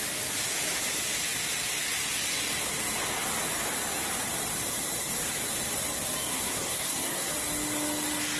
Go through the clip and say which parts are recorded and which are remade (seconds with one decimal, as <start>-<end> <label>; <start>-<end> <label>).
0.0-6.3 recorded; 6.3-7.3 remade; 7.3-8.4 recorded